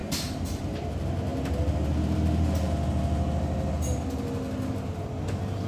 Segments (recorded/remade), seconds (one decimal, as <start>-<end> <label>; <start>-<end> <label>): 0.0-0.9 remade; 0.9-5.7 recorded